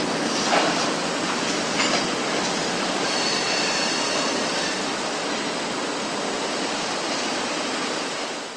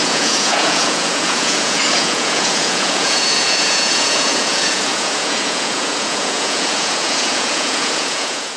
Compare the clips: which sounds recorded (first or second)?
first